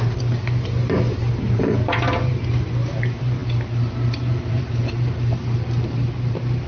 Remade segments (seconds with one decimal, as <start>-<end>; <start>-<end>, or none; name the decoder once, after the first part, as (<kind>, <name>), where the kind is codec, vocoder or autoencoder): 0.0-6.7 (vocoder, BigVGAN v2)